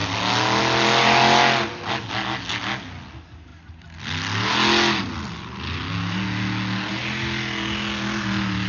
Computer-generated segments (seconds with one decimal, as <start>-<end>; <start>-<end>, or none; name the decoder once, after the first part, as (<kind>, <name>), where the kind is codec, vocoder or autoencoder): none